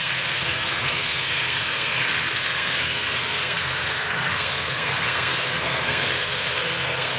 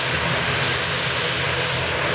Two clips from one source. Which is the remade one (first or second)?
first